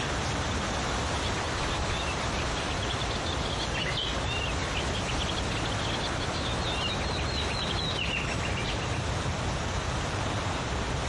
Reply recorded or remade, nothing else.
recorded